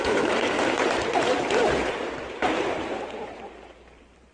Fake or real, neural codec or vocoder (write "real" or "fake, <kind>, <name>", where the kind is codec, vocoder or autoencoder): fake, vocoder, BigVGAN v2